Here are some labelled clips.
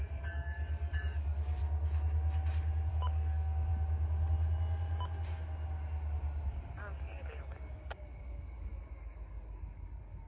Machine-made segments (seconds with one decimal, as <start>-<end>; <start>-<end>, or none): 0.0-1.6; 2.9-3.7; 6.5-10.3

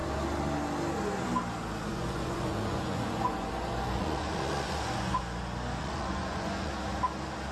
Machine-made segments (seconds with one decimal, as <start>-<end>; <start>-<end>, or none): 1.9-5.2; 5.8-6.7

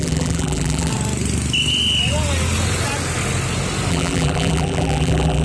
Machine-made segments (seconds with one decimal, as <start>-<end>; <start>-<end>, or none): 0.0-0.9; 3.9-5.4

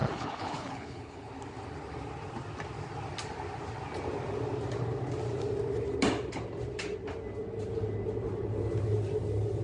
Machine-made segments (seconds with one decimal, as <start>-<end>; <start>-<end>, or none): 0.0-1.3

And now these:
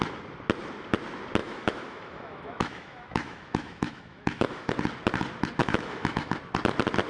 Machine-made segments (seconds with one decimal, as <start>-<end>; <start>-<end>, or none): 1.4-4.7; 5.6-6.3